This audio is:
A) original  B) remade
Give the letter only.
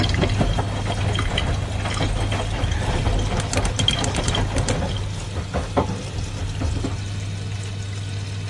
A